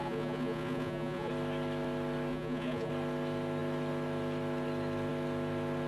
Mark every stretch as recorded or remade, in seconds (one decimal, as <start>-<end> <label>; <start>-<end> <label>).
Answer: 0.0-1.3 remade; 1.3-2.3 recorded; 2.3-2.9 remade; 2.9-5.9 recorded